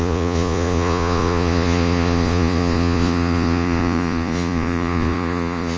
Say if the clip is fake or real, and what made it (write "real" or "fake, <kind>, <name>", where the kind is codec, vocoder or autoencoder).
fake, vocoder, Vocos